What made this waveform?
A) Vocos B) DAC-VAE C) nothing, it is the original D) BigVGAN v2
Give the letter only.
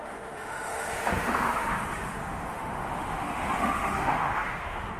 B